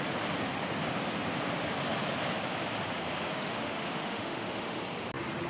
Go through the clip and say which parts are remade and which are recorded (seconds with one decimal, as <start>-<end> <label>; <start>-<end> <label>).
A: 0.0-3.3 recorded; 3.3-4.8 remade; 4.8-5.5 recorded